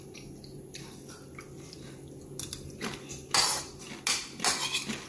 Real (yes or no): yes